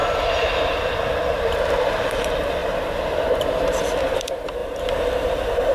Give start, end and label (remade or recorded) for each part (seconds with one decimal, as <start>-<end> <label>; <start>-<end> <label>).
0.0-1.7 recorded; 1.7-5.7 remade